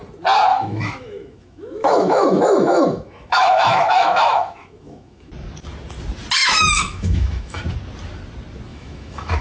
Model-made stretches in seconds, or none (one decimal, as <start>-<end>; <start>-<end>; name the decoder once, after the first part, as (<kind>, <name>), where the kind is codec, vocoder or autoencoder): 0.5-5.3 (autoencoder, DAC-VAE); 6.4-7.6; 8.7-9.4